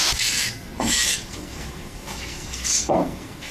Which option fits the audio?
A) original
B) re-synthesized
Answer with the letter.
B